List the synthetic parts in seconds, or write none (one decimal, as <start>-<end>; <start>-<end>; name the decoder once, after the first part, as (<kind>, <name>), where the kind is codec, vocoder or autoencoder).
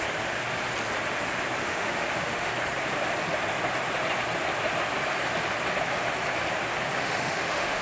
1.6-2.5 (autoencoder, DAC-VAE); 7.0-7.8